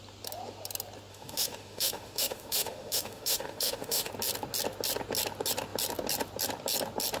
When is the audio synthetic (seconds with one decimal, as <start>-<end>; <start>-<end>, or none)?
1.1-4.1